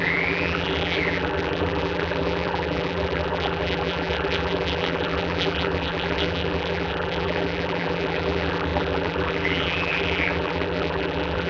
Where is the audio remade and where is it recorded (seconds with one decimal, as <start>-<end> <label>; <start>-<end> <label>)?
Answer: 0.0-11.5 remade